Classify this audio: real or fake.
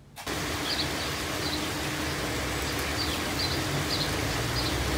real